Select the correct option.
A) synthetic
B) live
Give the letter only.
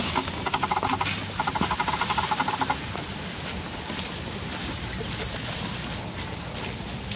B